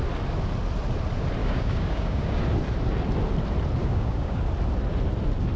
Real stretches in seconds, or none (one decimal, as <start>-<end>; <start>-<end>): 0.0-1.4; 2.4-3.8; 4.4-5.6

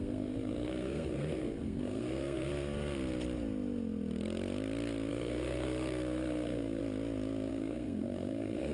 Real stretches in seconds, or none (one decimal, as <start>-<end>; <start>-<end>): 2.5-5.1; 6.8-7.5

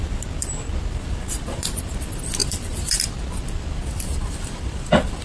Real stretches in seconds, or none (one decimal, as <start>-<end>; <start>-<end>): 0.0-2.4

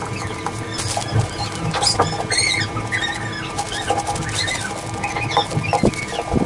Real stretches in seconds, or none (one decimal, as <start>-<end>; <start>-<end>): 0.0-1.0; 2.0-6.5

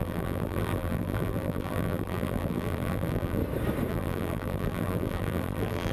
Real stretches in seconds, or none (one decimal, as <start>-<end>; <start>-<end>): 3.4-3.9